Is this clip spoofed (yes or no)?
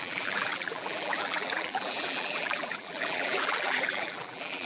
yes